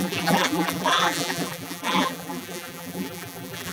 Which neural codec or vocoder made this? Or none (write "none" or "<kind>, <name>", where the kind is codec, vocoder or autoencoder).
vocoder, BigVGAN v2